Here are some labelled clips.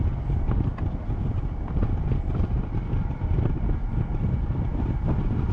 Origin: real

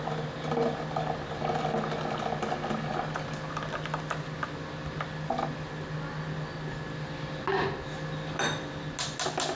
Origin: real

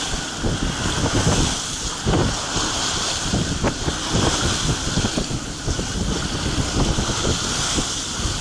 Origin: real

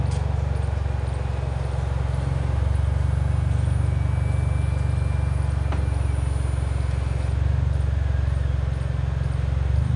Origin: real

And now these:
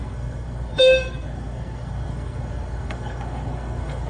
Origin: fake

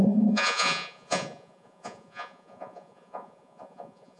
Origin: fake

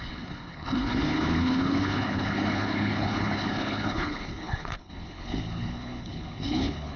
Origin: fake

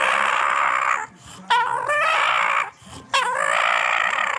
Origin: real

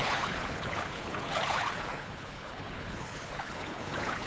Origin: fake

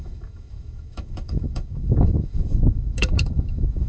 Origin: fake